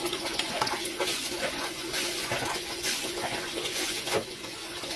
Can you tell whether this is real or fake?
fake